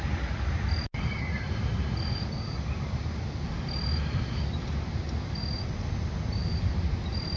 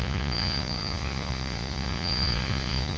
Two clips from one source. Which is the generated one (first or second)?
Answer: second